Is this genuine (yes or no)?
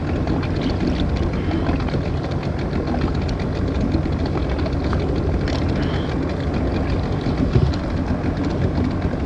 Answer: yes